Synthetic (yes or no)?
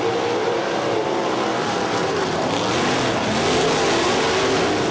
no